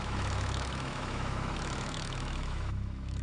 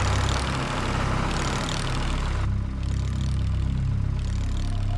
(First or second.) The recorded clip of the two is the second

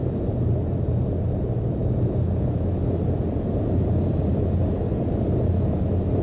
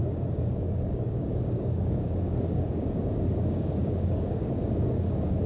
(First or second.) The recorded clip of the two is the first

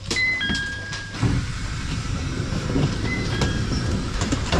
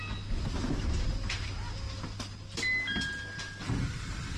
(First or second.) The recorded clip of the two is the second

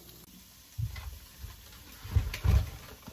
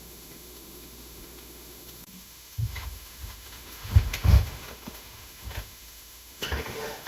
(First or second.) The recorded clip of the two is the first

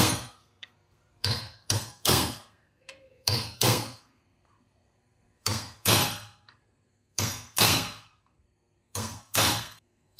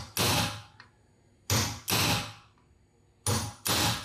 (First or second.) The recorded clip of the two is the second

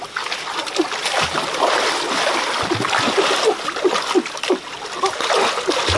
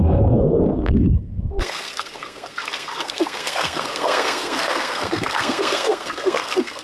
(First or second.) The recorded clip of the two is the first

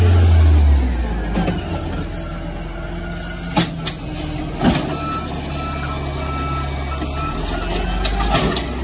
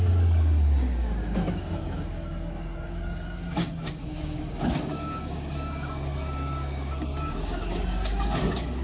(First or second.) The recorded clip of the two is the first